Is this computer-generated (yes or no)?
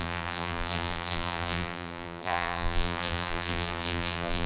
yes